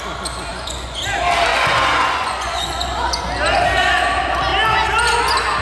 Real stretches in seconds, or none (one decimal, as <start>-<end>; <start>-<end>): 0.0-0.5; 1.0-1.5; 3.2-5.6